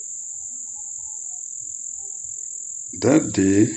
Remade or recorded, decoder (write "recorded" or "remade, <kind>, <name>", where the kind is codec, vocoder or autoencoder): recorded